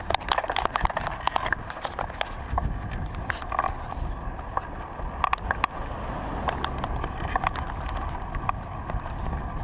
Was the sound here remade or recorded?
recorded